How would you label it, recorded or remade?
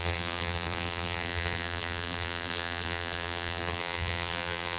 remade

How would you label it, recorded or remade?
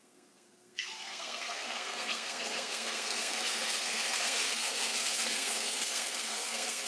remade